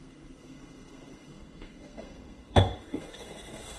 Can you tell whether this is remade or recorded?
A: remade